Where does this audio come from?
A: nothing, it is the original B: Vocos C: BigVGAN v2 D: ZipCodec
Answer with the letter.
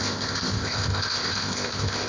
D